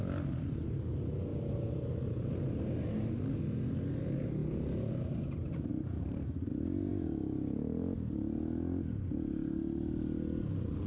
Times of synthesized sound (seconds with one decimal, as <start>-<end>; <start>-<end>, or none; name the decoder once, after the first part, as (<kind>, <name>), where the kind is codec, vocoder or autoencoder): 1.3-2.5 (vocoder, BigVGAN v2)